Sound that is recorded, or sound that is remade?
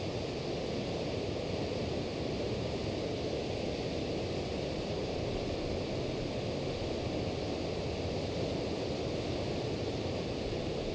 recorded